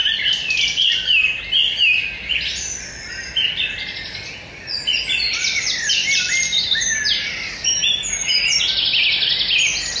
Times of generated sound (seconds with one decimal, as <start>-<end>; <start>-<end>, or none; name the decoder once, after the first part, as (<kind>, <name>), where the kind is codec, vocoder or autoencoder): 0.0-0.6 (vocoder, BigVGAN v2); 6.0-8.6